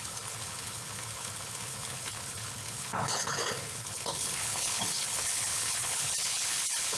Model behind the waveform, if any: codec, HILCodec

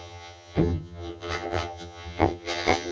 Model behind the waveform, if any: vocoder, HiFi-GAN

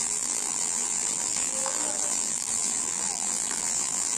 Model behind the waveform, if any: vocoder, BigVGAN v2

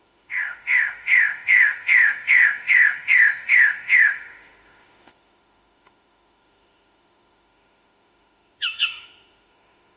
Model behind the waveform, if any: autoencoder, DAC-VAE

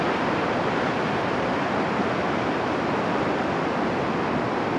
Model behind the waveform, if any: none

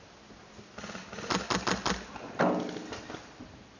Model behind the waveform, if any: none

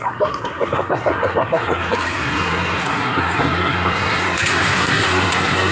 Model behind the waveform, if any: codec, SNAC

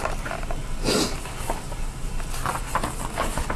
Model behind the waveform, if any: none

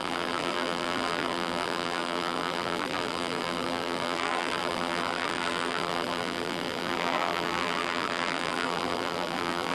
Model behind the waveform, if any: vocoder, BigVGAN v2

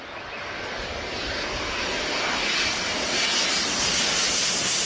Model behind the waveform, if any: none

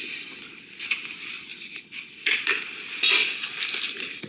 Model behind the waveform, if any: none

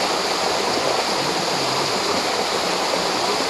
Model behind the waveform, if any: none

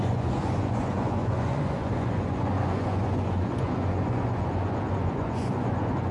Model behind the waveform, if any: vocoder, Vocos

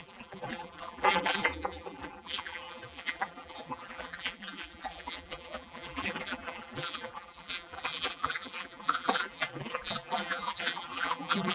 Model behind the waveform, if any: vocoder, BigVGAN v2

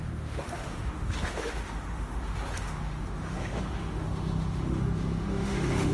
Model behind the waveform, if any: autoencoder, DAC-VAE